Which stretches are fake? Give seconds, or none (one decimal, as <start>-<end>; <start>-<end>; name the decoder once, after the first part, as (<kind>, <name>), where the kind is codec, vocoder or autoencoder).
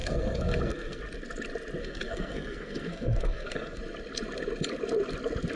0.0-1.0 (codec, SNAC); 1.8-3.8